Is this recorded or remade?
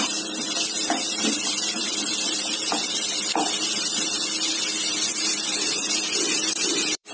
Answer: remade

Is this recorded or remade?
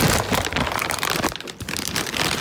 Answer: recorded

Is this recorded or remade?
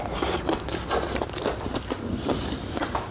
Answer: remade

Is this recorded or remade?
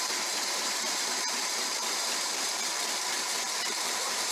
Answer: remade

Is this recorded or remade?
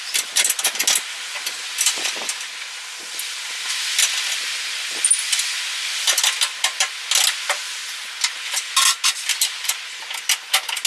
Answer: recorded